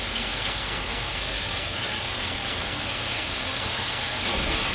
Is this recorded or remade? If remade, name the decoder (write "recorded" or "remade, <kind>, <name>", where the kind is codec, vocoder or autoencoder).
remade, codec, SNAC